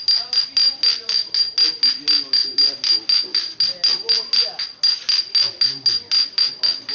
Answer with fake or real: real